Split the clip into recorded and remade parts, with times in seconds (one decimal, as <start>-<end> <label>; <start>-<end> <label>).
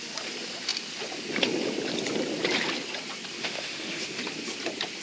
0.0-3.4 recorded; 3.4-4.2 remade; 4.2-5.0 recorded